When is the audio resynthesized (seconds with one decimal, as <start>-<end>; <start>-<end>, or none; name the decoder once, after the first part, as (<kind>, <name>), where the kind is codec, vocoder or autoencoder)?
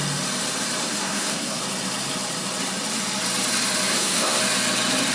0.8-1.6 (codec, SNAC); 3.9-4.4